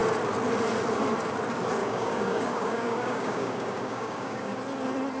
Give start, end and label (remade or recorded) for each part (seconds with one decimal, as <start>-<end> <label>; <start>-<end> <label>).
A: 0.0-1.8 recorded; 1.8-4.6 remade; 4.6-5.2 recorded